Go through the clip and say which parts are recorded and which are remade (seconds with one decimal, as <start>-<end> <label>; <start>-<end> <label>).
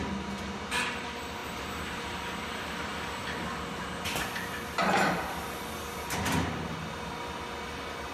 0.0-1.4 recorded; 1.4-2.0 remade; 2.0-4.8 recorded; 4.8-5.6 remade; 5.6-8.1 recorded